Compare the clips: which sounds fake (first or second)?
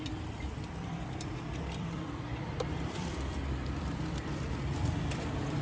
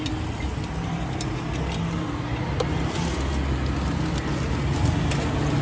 first